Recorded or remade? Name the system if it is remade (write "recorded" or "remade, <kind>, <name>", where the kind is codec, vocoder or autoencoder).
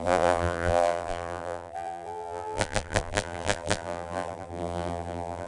remade, vocoder, BigVGAN v2